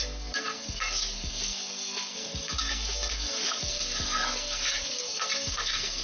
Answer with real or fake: fake